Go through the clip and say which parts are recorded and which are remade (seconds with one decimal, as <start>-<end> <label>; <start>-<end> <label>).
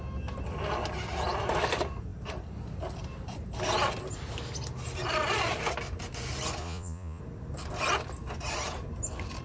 0.0-6.6 recorded; 6.6-7.2 remade; 7.2-9.4 recorded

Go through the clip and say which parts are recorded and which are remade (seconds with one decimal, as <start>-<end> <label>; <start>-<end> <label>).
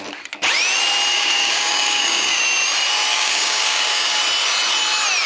0.0-1.1 recorded; 1.1-2.4 remade; 2.4-3.1 recorded; 3.1-4.2 remade; 4.2-5.3 recorded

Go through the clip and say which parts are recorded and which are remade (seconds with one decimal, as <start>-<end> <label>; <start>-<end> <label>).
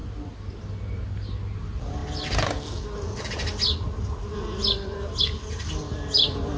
0.0-6.6 recorded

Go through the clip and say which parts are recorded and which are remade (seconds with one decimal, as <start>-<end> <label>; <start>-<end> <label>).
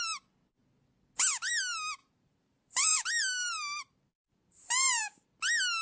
0.0-2.0 recorded; 2.0-5.3 remade; 5.3-5.8 recorded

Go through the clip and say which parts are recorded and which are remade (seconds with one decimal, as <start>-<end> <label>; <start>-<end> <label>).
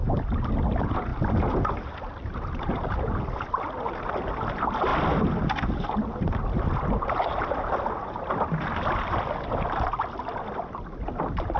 0.0-11.6 recorded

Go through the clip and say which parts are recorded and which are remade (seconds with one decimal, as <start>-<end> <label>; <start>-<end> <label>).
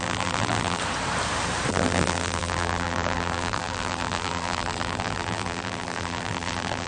0.0-0.8 remade; 0.8-1.7 recorded; 1.7-6.9 remade